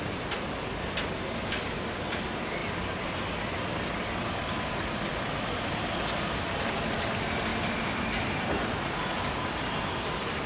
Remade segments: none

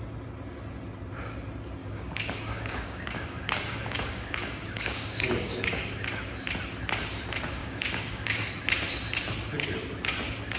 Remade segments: 1.8-5.9 (codec, DAC); 7.6-8.5